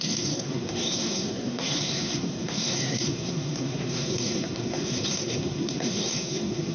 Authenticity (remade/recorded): remade